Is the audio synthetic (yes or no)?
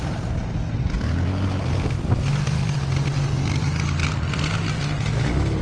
no